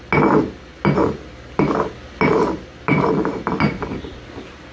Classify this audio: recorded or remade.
recorded